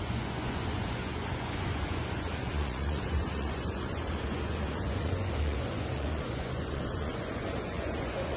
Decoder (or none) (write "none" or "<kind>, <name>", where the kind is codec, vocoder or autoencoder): vocoder, Vocos